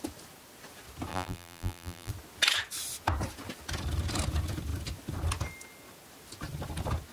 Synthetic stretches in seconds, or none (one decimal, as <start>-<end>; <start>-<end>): 1.1-2.1